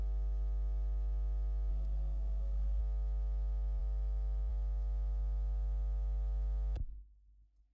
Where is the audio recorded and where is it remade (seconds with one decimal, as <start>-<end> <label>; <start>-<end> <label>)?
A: 0.0-1.7 recorded; 1.7-2.8 remade; 2.8-7.7 recorded